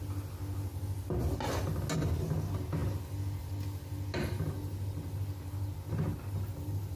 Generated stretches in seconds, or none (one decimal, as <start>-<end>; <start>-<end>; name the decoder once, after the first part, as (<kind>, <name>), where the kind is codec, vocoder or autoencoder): 6.5-7.0 (vocoder, BigVGAN v2)